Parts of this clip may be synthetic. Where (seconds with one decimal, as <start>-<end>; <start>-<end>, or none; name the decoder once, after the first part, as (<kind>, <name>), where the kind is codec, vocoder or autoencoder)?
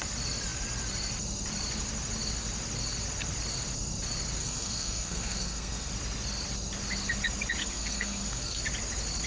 4.4-5.9 (codec, SNAC); 7.6-8.6